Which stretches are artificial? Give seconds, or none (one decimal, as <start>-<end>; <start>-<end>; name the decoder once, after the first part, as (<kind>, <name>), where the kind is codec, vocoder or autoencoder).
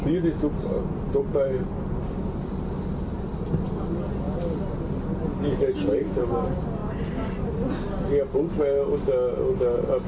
none